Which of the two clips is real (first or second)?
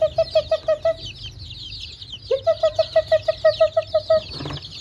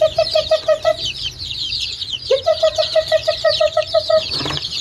first